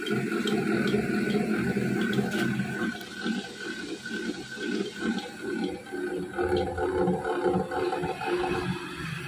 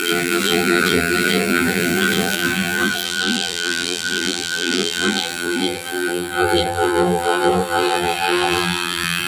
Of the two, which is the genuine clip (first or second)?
first